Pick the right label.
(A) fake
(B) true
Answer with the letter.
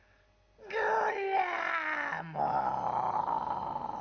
B